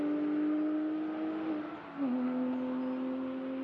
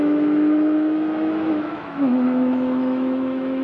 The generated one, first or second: second